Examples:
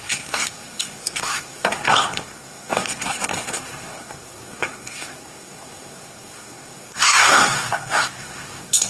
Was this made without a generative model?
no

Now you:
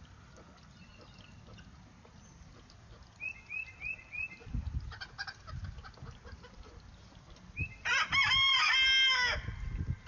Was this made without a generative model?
yes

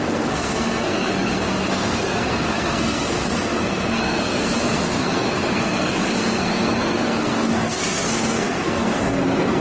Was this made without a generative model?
no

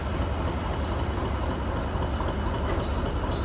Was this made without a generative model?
yes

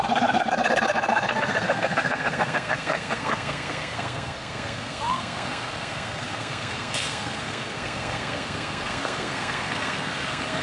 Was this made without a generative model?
no